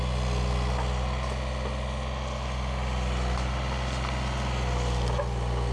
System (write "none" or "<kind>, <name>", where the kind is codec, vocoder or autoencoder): none